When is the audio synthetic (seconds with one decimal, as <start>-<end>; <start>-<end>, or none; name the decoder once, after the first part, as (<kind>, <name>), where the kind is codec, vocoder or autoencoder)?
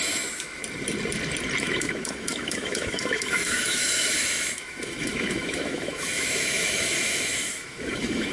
0.0-0.6 (autoencoder, DAC-VAE); 1.6-8.3